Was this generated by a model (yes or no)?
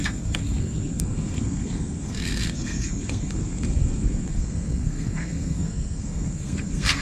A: yes